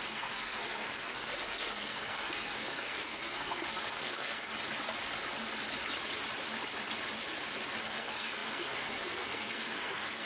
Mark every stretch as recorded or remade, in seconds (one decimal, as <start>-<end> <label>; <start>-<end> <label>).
0.0-4.5 remade; 4.5-7.8 recorded; 7.8-10.3 remade